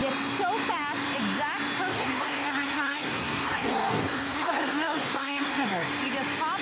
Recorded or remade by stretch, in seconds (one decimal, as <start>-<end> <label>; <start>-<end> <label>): 0.0-1.9 recorded; 1.9-5.9 remade; 5.9-6.6 recorded